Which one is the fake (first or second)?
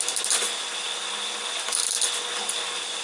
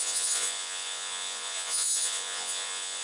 second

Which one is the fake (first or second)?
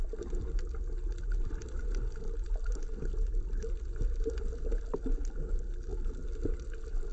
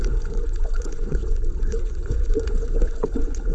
second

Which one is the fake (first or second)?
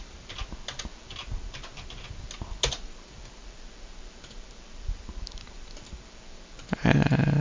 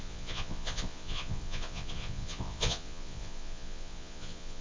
second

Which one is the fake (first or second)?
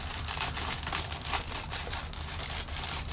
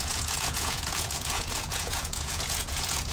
second